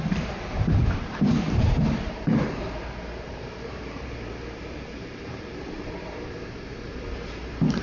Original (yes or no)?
no